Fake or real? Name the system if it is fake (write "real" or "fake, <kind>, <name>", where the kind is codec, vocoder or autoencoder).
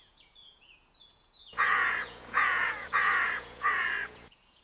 fake, vocoder, Vocos